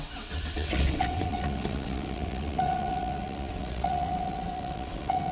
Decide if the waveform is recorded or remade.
remade